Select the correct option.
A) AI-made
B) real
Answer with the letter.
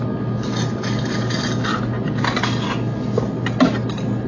B